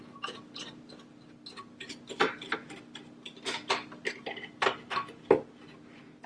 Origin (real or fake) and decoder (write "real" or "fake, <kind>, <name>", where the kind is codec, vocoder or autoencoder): real